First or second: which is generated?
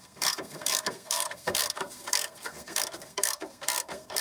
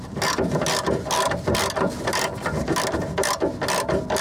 first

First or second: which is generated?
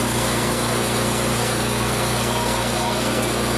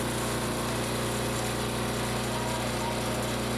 first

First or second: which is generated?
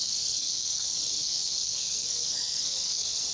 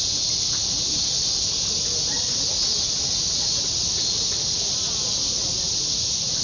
first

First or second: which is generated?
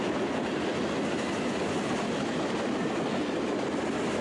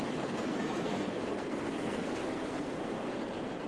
second